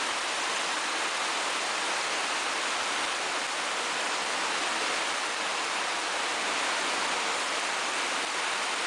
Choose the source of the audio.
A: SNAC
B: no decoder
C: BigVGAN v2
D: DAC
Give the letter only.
B